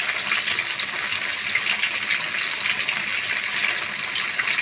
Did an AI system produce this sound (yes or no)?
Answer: no